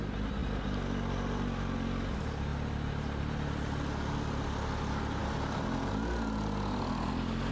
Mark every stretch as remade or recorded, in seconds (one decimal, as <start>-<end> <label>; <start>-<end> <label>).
0.0-7.5 recorded